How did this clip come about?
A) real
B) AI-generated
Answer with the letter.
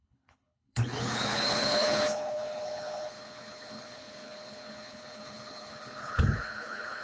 B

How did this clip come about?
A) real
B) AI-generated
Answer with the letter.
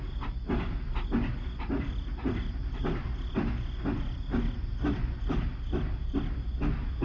A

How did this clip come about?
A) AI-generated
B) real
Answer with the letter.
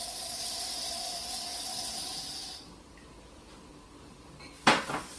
B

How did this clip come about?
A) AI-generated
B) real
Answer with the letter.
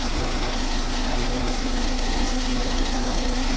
A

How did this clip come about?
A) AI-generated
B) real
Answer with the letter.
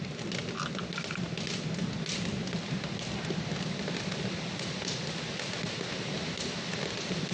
B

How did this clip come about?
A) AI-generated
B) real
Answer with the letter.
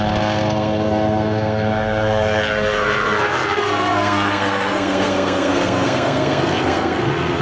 A